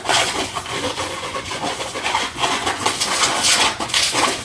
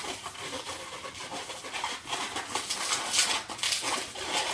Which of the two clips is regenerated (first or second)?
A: first